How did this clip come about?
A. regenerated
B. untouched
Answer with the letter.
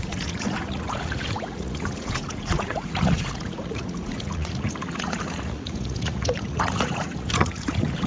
A